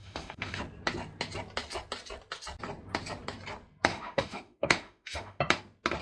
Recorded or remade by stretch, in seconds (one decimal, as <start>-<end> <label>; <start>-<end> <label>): 0.0-0.6 remade; 0.6-3.9 recorded; 3.9-5.4 remade; 5.4-6.0 recorded